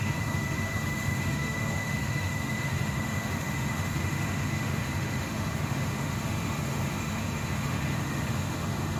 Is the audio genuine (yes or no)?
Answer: no